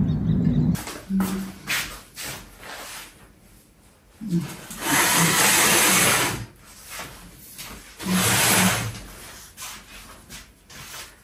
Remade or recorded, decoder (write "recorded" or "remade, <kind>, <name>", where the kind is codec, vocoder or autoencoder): recorded